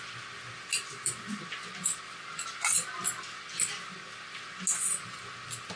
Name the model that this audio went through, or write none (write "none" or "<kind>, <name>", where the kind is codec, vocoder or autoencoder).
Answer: none